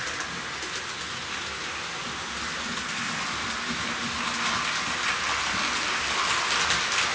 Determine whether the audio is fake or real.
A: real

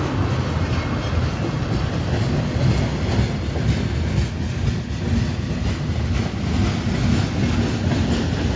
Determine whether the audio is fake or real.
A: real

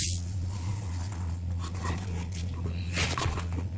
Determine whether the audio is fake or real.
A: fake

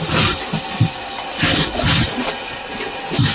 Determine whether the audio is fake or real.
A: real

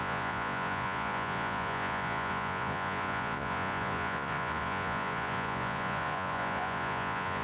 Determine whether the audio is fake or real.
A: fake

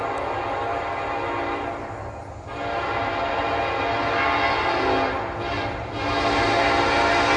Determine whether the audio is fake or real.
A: real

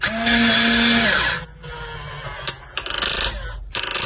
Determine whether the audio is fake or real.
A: real